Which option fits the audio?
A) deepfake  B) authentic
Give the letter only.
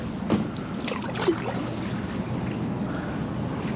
B